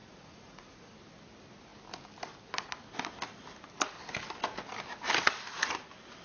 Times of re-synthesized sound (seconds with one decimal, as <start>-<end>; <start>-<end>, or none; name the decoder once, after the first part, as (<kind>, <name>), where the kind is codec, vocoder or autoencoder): 0.0-0.9 (vocoder, Vocos)